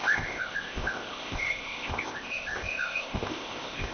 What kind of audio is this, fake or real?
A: fake